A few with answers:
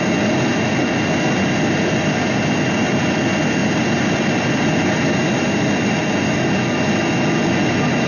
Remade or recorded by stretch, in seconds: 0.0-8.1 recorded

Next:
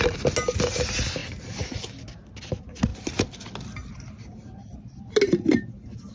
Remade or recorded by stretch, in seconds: 0.0-1.2 recorded; 1.2-1.8 remade; 1.8-6.1 recorded

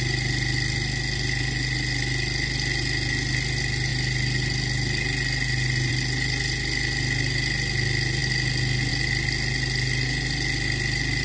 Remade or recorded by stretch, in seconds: 0.0-11.2 recorded